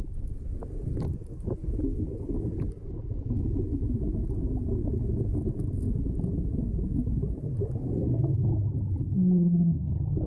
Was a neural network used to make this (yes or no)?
no